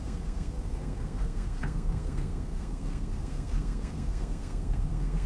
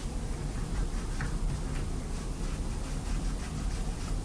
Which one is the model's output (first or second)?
first